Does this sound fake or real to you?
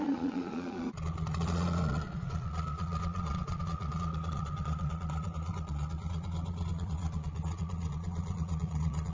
fake